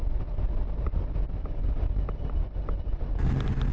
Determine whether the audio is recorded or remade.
recorded